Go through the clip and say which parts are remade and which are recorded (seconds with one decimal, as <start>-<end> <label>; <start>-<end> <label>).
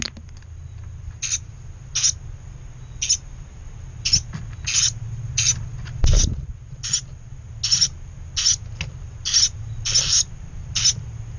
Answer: 0.0-11.4 recorded